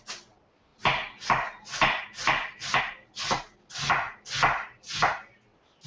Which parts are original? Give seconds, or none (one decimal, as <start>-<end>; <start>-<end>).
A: 0.0-5.9